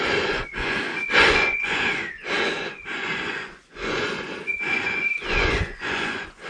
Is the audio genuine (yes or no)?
no